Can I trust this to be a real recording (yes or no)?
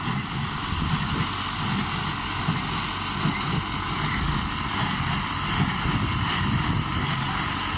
yes